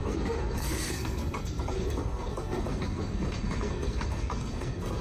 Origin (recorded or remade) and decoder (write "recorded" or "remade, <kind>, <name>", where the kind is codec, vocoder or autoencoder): remade, codec, SNAC